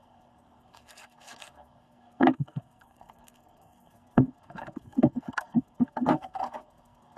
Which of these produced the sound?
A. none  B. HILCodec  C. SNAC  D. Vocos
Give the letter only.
C